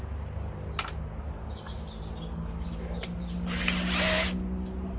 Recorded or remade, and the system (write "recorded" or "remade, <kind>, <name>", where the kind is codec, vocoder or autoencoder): recorded